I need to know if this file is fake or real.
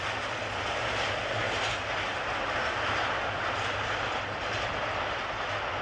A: real